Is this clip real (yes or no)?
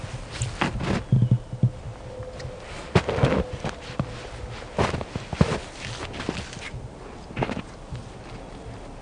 yes